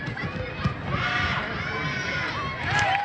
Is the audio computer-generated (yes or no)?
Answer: no